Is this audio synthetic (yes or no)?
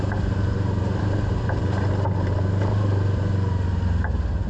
no